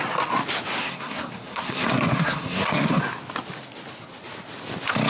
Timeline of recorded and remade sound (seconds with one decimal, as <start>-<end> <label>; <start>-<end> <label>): 0.0-0.8 recorded; 0.8-3.0 remade; 3.0-5.1 recorded